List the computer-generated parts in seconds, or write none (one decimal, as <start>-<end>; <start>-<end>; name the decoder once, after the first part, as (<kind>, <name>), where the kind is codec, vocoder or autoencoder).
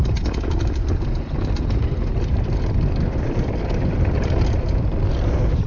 none